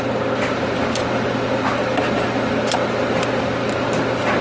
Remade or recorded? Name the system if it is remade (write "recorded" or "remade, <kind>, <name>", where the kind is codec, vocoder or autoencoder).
recorded